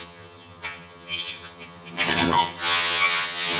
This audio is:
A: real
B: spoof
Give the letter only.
B